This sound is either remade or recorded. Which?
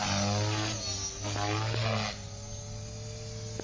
recorded